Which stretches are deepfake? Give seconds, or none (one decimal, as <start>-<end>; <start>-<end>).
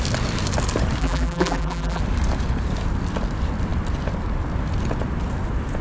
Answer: 1.0-2.0